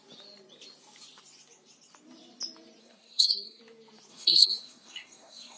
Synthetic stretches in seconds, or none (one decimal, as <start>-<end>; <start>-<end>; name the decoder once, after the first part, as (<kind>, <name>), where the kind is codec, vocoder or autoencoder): 2.8-3.6 (codec, SNAC); 4.1-5.6